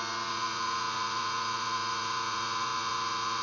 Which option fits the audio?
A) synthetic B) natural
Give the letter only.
A